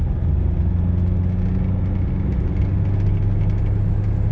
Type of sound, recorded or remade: recorded